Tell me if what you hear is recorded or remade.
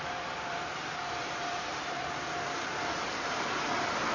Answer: remade